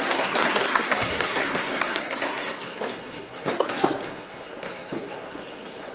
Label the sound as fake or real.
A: fake